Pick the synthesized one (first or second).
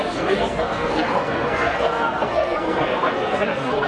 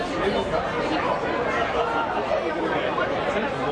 first